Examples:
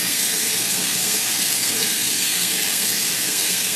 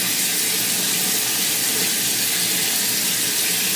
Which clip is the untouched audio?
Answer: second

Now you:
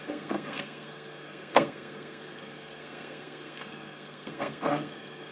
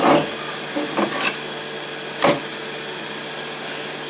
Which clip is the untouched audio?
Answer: second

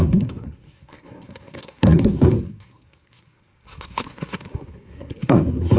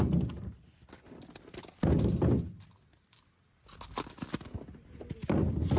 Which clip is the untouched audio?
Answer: second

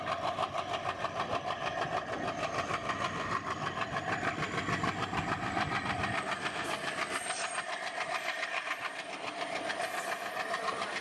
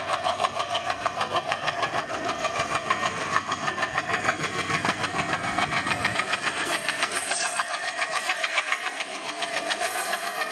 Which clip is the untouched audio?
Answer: first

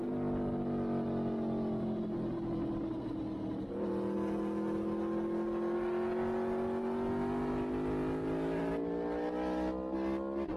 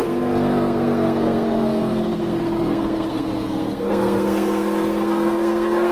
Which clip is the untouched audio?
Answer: first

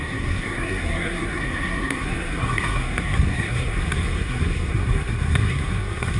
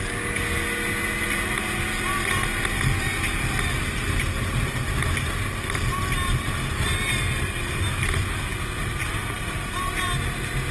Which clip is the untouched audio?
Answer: second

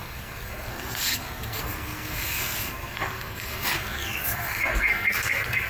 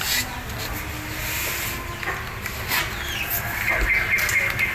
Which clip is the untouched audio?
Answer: second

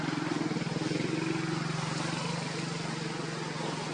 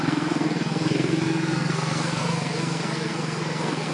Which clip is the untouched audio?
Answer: first